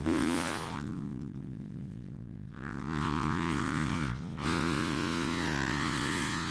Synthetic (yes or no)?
yes